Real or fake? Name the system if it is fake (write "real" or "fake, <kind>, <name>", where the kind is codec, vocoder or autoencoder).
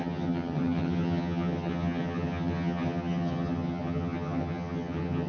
fake, vocoder, HiFi-GAN